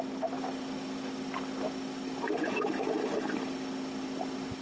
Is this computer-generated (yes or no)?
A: no